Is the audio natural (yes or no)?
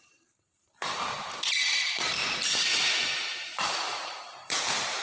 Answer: no